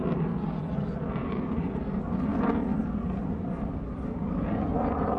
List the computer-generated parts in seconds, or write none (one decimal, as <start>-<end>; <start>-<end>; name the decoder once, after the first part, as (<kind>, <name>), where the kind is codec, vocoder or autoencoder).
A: 1.2-1.8 (vocoder, BigVGAN v2)